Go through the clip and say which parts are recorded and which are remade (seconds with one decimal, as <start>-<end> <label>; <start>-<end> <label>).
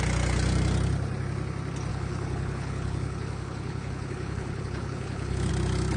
0.0-1.9 recorded; 1.9-5.5 remade; 5.5-6.0 recorded